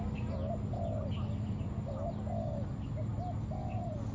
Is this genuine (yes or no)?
yes